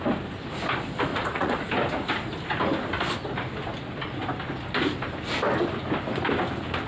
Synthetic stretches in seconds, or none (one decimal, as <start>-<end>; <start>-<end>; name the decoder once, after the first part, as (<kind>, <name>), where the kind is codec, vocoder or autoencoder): 1.1-1.7 (vocoder, Vocos)

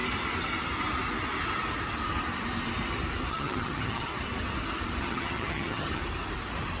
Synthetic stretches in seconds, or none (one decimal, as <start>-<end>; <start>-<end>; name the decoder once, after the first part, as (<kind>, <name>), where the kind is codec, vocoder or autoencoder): 3.3-4.1 (vocoder, HiFi-GAN); 5.0-6.0

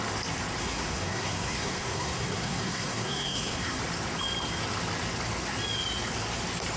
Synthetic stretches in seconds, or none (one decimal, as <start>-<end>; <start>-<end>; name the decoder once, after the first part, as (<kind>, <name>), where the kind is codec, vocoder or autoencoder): 0.6-3.8 (codec, SNAC)

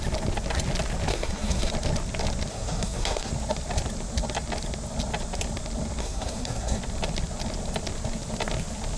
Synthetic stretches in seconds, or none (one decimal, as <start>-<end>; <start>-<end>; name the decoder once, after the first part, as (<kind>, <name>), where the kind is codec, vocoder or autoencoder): 1.1-1.7 (codec, SNAC); 2.5-3.3; 6.0-6.8

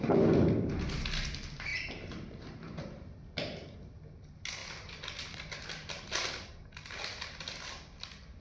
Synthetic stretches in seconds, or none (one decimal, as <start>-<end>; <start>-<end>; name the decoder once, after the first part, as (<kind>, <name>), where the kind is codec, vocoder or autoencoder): none

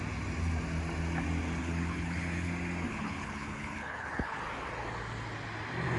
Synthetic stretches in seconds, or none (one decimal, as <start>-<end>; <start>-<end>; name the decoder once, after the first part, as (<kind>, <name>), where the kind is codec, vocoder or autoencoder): 1.6-2.5 (codec, HILCodec); 2.9-4.4

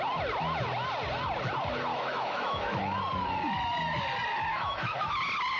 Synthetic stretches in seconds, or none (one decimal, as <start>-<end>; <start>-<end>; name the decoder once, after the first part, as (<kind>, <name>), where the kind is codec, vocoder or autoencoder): 1.9-2.8 (autoencoder, DAC-VAE); 4.5-5.1

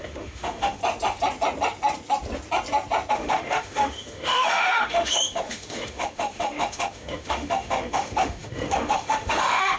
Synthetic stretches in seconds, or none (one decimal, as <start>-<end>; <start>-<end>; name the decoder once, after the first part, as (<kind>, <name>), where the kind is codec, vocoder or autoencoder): 0.0-0.8 (autoencoder, DAC-VAE); 3.1-9.8